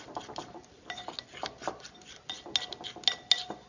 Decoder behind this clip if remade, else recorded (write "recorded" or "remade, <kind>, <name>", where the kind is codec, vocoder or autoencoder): recorded